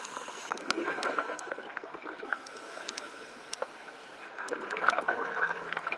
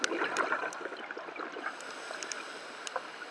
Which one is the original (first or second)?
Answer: second